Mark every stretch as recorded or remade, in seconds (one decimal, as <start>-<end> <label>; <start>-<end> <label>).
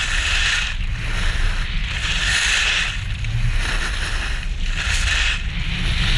0.0-6.2 recorded